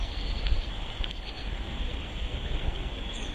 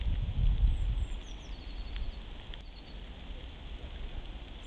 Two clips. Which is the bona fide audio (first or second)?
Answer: second